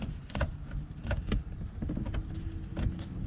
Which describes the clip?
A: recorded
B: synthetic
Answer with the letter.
A